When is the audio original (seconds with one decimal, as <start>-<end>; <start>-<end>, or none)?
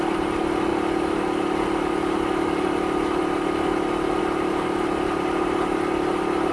0.0-6.5